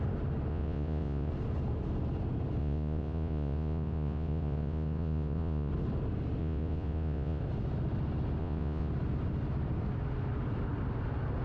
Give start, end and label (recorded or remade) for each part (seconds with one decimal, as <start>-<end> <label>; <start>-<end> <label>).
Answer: 0.0-0.5 recorded; 0.5-1.3 remade; 1.3-2.6 recorded; 2.6-5.7 remade; 5.7-6.4 recorded; 6.4-7.4 remade; 7.4-8.4 recorded; 8.4-8.9 remade; 8.9-11.4 recorded